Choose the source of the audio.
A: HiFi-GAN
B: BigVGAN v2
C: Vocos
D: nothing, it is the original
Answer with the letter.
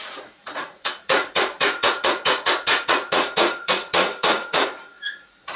C